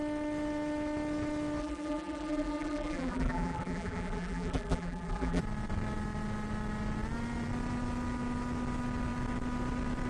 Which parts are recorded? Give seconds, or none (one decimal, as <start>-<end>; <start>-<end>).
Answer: 0.0-1.6; 5.4-10.1